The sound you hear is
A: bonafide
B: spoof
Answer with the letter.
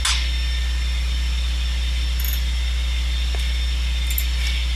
A